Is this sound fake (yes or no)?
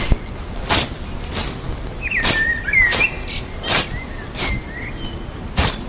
no